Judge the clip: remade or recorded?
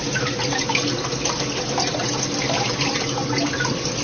recorded